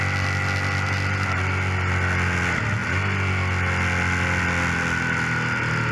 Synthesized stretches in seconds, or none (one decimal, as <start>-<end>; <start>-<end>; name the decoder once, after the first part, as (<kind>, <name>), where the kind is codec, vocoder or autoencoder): none